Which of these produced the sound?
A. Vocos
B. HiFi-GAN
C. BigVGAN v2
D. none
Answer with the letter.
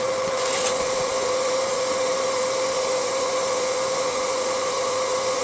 A